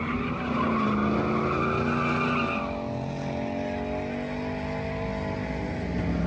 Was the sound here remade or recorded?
recorded